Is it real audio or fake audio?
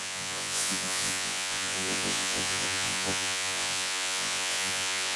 fake